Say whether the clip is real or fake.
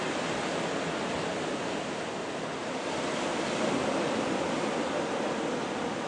real